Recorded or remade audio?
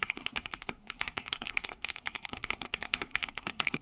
remade